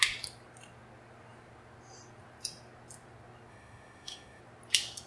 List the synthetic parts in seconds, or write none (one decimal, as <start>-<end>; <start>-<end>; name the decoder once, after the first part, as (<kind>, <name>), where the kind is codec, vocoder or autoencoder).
3.5-4.4 (autoencoder, DAC-VAE)